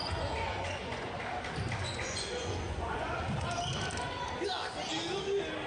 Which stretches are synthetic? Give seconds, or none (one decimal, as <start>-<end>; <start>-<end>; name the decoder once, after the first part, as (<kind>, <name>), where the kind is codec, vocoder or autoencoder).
0.0-1.2 (vocoder, Vocos); 1.8-3.3